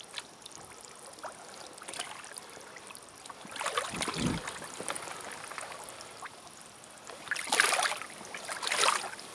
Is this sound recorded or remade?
recorded